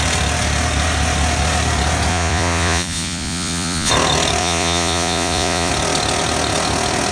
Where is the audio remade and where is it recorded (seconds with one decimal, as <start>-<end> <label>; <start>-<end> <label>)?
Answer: 0.0-2.1 recorded; 2.1-3.9 remade; 3.9-4.4 recorded; 4.4-5.7 remade; 5.7-7.1 recorded